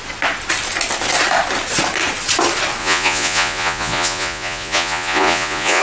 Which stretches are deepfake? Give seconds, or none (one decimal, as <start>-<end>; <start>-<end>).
2.8-5.8